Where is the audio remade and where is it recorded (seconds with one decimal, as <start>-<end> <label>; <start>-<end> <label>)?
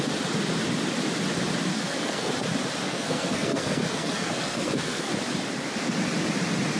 0.0-1.7 recorded; 1.7-2.3 remade; 2.3-2.8 recorded; 2.8-5.1 remade; 5.1-6.8 recorded